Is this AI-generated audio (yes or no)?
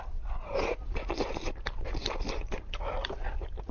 no